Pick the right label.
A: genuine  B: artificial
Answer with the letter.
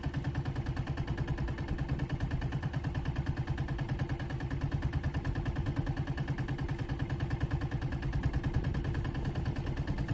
A